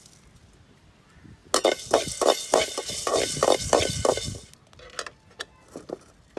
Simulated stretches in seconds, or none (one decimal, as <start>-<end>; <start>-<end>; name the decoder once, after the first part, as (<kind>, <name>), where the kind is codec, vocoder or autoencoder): none